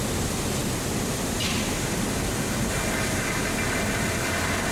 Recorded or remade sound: recorded